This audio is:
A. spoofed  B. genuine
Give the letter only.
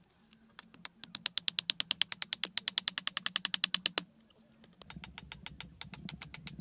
B